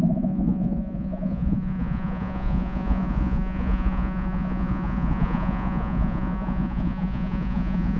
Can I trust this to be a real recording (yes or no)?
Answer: no